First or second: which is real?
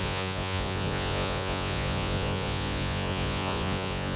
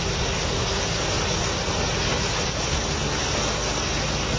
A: second